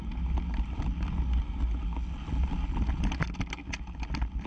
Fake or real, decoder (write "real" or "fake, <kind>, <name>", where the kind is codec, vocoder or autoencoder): real